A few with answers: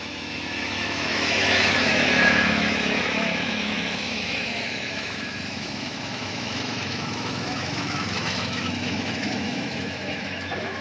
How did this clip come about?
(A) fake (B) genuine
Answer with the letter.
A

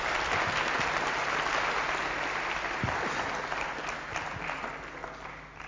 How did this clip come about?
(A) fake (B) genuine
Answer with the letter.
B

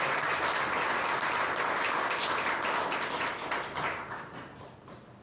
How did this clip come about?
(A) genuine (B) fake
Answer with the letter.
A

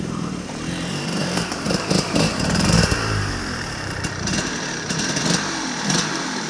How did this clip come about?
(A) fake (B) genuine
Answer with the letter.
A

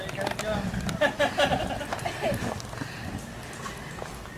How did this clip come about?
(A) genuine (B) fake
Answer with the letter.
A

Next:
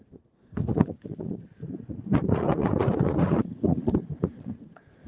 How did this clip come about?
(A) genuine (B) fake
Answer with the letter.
B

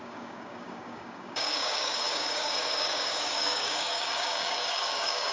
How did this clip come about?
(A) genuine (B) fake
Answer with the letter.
B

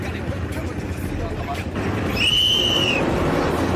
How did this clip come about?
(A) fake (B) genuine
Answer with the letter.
B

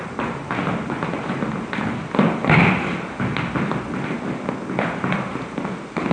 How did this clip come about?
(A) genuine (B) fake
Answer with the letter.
A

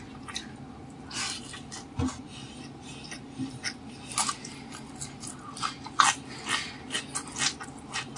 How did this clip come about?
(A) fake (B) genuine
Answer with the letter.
B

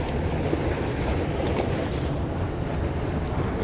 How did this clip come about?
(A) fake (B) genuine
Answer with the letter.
B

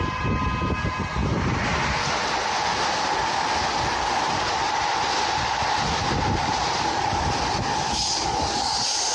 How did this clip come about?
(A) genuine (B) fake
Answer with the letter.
A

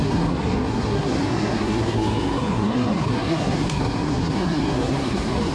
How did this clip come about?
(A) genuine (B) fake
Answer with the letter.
B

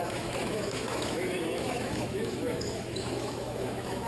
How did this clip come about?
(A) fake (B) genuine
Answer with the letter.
A